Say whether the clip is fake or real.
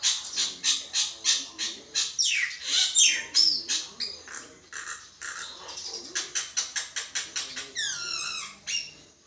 real